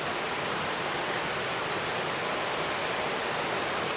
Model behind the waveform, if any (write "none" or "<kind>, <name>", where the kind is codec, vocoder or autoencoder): vocoder, BigVGAN v2